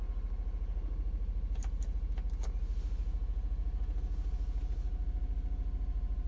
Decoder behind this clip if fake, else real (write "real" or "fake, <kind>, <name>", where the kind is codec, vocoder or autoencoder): real